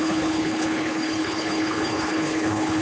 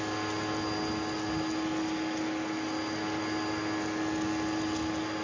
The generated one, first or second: first